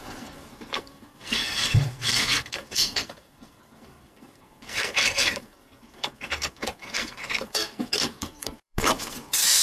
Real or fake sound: fake